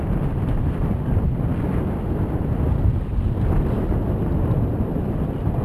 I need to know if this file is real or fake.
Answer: real